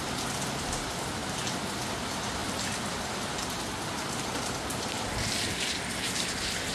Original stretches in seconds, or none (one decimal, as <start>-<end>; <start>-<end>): 0.0-6.7